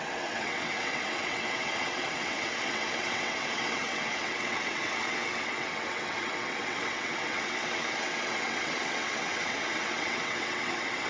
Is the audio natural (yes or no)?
no